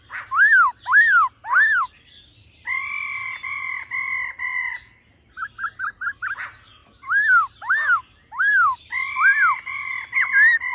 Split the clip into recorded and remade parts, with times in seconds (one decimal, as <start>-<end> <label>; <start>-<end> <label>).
0.0-10.7 recorded